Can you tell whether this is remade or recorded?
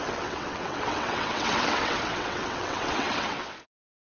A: remade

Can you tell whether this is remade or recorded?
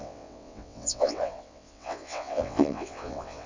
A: remade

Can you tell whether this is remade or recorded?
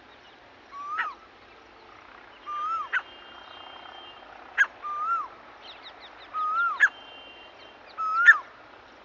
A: recorded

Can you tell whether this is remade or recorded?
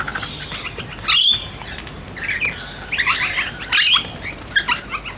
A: recorded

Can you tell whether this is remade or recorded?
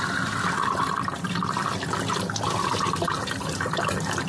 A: recorded